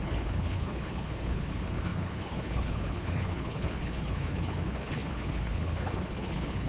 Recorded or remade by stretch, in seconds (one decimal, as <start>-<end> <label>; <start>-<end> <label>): 0.0-6.7 remade